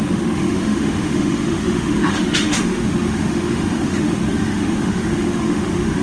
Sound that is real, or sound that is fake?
fake